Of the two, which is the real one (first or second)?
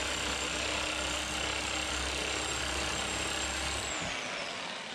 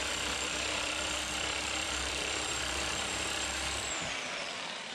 first